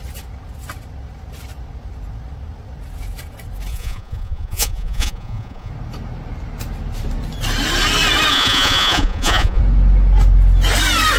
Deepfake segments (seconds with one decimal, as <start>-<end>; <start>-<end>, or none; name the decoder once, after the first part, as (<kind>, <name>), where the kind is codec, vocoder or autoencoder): 3.7-5.7 (vocoder, Vocos); 8.3-9.6